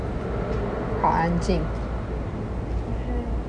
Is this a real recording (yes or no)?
yes